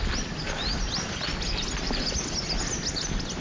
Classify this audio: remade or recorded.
recorded